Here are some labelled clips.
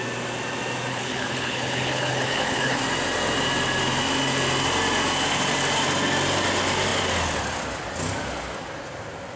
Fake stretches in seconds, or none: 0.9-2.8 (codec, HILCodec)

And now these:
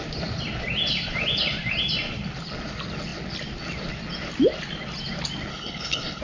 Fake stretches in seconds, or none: 5.5-6.2 (codec, HILCodec)

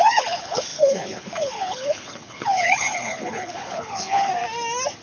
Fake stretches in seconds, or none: 0.0-4.3 (codec, HILCodec)

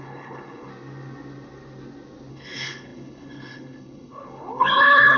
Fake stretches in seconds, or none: 0.0-0.7 (codec, HILCodec); 2.3-5.2

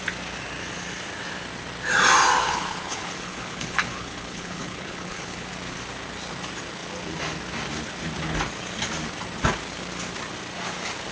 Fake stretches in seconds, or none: 2.4-5.5 (codec, HILCodec)

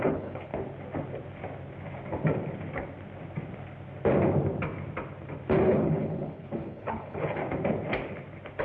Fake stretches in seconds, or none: 0.0-0.5 (codec, HILCodec); 5.6-7.4

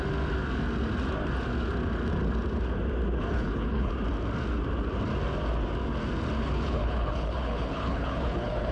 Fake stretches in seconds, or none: 3.3-3.9 (codec, HILCodec); 6.4-8.7

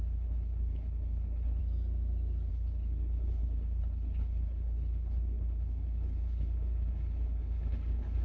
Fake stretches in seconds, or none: 0.0-1.6 (codec, HILCodec); 2.5-8.2